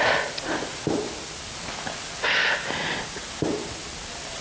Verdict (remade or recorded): recorded